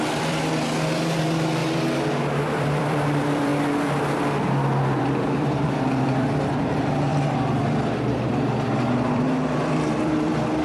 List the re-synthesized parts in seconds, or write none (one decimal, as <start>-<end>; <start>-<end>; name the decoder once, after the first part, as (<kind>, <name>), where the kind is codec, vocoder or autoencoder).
0.0-1.6 (vocoder, BigVGAN v2); 2.4-3.5; 5.0-10.6